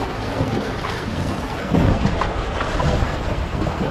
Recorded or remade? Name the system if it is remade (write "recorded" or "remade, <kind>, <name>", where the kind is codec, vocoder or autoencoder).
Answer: remade, codec, SNAC